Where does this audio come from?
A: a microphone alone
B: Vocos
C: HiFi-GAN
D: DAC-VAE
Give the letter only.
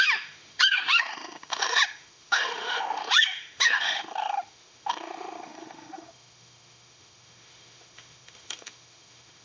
D